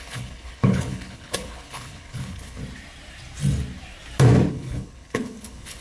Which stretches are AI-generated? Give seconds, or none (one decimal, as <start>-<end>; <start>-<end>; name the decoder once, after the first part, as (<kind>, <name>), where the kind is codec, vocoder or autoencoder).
0.0-2.6 (codec, HILCodec); 4.5-5.8

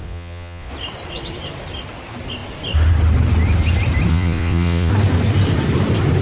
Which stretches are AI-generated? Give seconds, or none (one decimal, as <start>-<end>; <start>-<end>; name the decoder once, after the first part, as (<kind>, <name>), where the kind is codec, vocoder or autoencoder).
0.0-0.7 (vocoder, Vocos); 4.1-4.9

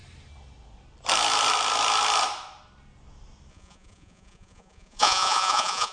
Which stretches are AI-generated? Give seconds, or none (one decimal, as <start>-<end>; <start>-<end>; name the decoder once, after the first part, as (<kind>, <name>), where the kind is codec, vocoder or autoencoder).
3.5-5.9 (vocoder, Vocos)

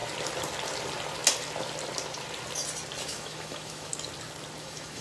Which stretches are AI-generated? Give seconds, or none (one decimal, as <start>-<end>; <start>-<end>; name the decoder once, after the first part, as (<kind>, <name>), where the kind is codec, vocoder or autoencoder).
3.0-3.9 (autoencoder, DAC-VAE); 4.6-5.0

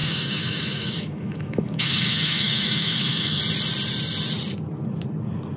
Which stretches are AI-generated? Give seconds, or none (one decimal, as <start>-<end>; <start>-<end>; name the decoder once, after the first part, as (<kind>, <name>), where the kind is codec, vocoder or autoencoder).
0.0-3.4 (autoencoder, DAC-VAE)